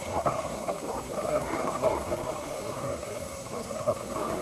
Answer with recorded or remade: remade